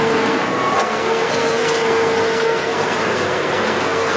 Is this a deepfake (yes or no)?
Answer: yes